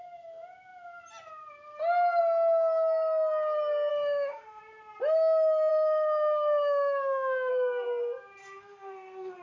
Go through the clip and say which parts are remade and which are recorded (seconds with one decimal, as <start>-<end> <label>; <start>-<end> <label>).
0.0-3.9 recorded; 3.9-4.6 remade; 4.6-5.7 recorded; 5.7-7.5 remade; 7.5-8.4 recorded; 8.4-9.4 remade